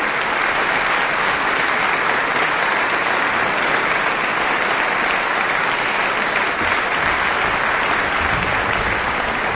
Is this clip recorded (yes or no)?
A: yes